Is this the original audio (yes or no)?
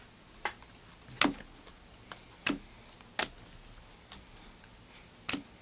yes